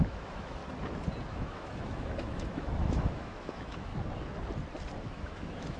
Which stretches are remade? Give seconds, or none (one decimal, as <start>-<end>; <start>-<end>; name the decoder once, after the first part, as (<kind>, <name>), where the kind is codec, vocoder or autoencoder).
0.0-0.6 (autoencoder, DAC-VAE); 1.3-3.9; 5.0-5.8